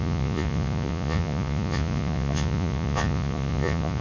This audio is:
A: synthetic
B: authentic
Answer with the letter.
A